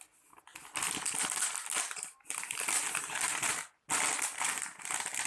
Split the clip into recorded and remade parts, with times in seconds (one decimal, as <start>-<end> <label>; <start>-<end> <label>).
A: 0.0-5.3 recorded